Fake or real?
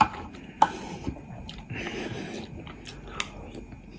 real